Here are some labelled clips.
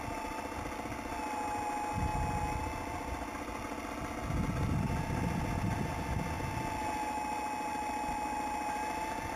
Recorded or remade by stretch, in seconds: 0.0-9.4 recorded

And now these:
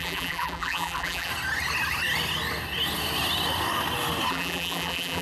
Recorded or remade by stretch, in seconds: 0.0-1.3 remade; 1.3-4.3 recorded; 4.3-5.2 remade

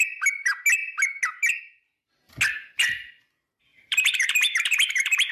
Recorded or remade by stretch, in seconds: 0.0-3.7 recorded; 3.7-5.3 remade